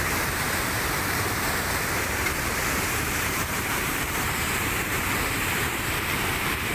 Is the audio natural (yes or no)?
no